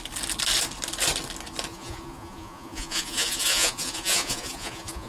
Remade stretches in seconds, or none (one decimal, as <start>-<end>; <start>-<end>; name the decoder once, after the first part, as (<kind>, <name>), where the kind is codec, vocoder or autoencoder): 1.7-5.1 (vocoder, Vocos)

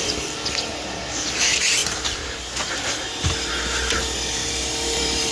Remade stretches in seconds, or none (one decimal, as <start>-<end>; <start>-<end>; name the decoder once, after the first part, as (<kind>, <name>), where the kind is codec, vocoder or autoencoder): 1.8-3.5 (vocoder, BigVGAN v2); 4.4-5.3